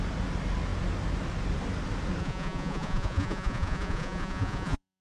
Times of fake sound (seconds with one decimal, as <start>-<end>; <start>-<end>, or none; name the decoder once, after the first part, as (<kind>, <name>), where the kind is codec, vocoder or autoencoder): 2.2-5.0 (vocoder, Vocos)